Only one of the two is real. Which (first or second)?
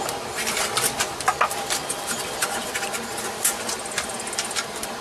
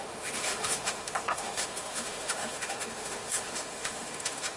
first